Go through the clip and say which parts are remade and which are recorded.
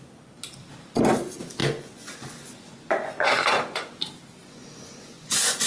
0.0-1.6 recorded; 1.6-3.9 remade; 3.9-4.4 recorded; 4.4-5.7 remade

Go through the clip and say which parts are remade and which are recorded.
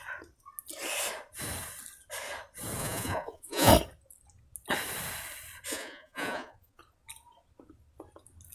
0.0-2.8 recorded; 2.8-3.7 remade; 3.7-5.7 recorded; 5.7-6.8 remade; 6.8-8.5 recorded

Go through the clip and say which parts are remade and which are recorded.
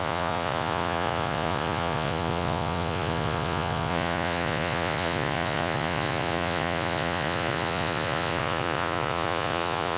0.0-10.0 remade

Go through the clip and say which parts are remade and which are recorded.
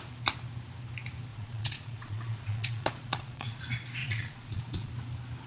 0.0-1.3 recorded; 1.3-3.6 remade; 3.6-4.0 recorded; 4.0-4.9 remade; 4.9-5.5 recorded